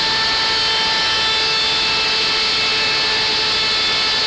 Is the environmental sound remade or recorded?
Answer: recorded